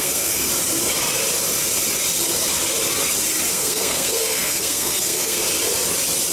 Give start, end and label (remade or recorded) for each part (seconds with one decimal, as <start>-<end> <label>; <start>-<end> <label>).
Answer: 0.0-0.5 remade; 0.5-3.5 recorded; 3.5-5.4 remade; 5.4-6.3 recorded